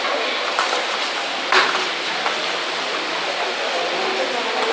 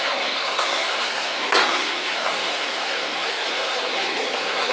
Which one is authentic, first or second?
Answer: first